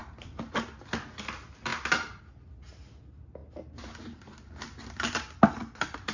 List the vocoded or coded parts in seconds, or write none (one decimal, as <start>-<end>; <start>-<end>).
none